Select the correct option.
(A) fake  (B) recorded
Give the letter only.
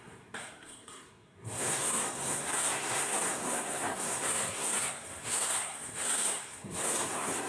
A